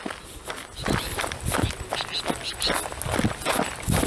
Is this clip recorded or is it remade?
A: recorded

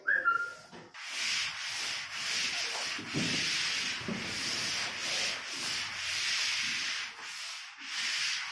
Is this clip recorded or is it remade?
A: recorded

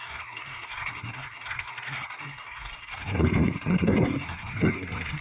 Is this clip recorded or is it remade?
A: remade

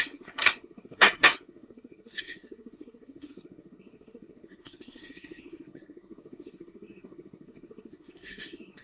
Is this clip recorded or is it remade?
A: remade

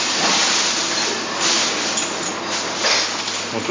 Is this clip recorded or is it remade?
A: recorded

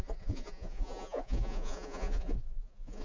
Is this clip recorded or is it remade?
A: remade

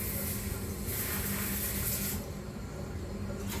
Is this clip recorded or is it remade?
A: recorded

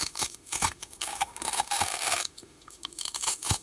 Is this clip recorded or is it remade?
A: remade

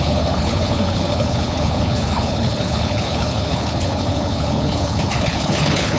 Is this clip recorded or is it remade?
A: remade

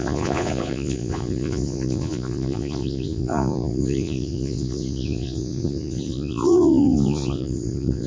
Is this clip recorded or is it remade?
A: remade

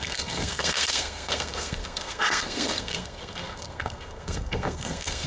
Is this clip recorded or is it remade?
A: remade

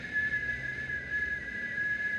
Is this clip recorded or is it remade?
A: recorded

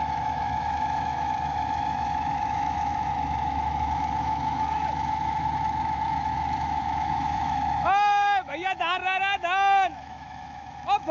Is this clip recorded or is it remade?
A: remade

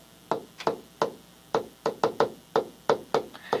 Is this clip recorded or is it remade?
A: recorded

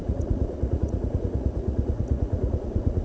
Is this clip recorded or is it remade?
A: remade